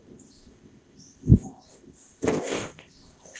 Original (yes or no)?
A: no